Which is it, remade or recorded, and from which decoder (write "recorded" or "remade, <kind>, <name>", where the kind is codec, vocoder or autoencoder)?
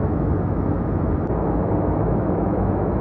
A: remade, autoencoder, DAC-VAE